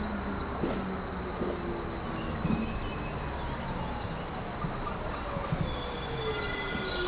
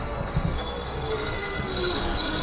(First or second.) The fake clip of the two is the second